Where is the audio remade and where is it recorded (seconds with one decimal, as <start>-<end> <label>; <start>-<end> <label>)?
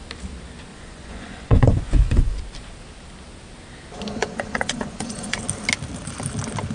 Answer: 0.0-0.7 recorded; 0.7-2.4 remade; 2.4-4.2 recorded; 4.2-5.4 remade; 5.4-6.7 recorded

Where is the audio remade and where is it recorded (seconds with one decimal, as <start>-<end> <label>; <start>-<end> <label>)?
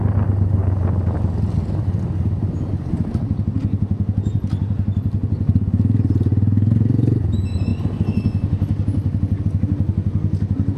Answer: 0.0-6.3 recorded; 6.3-7.2 remade; 7.2-10.8 recorded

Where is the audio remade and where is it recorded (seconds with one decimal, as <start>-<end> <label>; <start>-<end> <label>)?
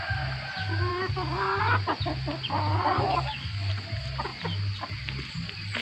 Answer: 0.0-0.9 recorded; 0.9-1.6 remade; 1.6-2.7 recorded; 2.7-3.7 remade; 3.7-5.8 recorded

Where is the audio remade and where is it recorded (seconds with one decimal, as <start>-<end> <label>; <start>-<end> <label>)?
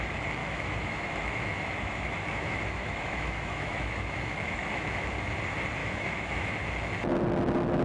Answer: 0.0-0.4 recorded; 0.4-5.1 remade; 5.1-5.8 recorded; 5.8-6.5 remade; 6.5-7.8 recorded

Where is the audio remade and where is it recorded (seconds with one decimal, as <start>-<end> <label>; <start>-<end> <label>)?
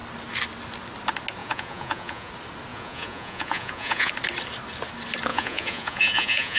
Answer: 0.0-1.4 recorded; 1.4-2.3 remade; 2.3-2.7 recorded; 2.7-4.1 remade; 4.1-5.3 recorded; 5.3-6.6 remade